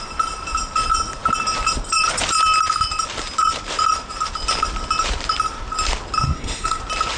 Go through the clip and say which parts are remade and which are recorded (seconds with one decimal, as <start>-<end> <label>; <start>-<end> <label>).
0.0-6.2 recorded; 6.2-6.8 remade; 6.8-7.2 recorded